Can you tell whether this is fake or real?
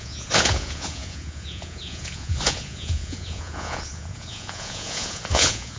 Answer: fake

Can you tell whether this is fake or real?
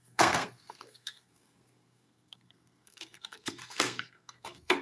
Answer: fake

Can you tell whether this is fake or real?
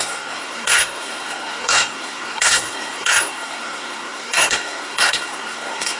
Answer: fake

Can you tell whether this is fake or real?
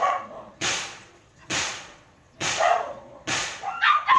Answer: fake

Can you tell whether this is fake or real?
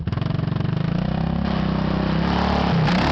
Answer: real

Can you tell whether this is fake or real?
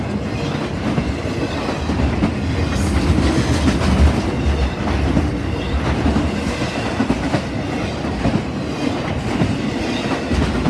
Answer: real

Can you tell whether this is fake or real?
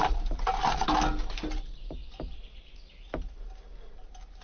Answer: real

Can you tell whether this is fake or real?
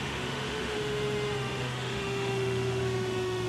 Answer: fake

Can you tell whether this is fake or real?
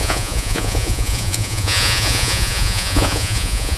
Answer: fake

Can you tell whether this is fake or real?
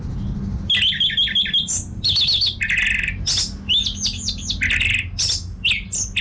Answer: real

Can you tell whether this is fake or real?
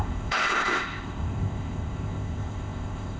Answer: fake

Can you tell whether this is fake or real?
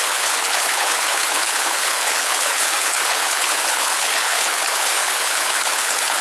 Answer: fake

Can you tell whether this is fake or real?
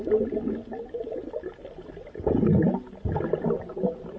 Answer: real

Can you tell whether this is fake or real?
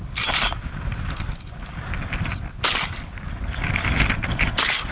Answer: real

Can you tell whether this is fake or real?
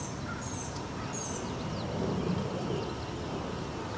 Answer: real